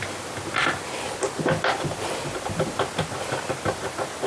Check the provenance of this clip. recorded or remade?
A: recorded